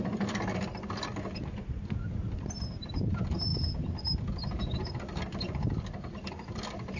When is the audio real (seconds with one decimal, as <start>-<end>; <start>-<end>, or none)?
3.5-5.8